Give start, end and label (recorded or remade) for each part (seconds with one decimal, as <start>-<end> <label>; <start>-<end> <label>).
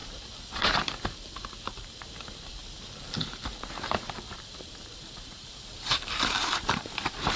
0.0-7.4 remade